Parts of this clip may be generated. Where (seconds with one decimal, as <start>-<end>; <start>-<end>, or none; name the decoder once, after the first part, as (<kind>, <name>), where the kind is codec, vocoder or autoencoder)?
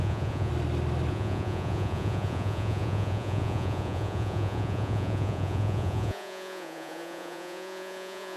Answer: 0.0-0.5 (vocoder, Vocos); 1.1-8.4